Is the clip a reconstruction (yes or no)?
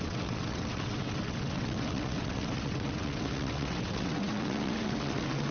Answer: yes